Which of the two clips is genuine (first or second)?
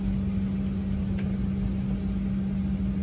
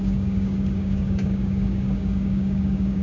first